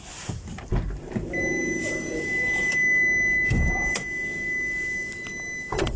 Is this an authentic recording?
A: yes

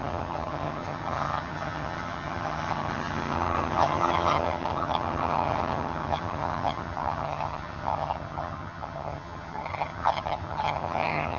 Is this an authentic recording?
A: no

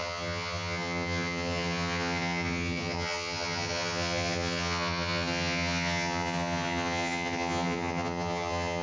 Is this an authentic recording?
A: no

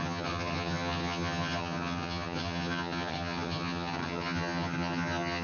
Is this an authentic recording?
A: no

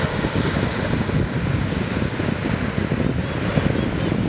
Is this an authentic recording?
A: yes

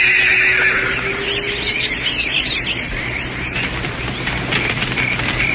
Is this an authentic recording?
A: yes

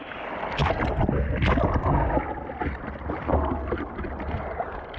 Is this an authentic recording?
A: yes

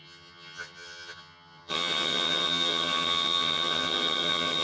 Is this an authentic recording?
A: no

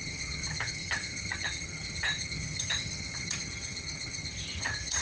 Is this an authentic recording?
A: no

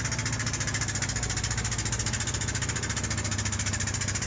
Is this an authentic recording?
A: yes